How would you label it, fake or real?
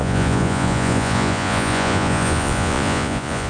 fake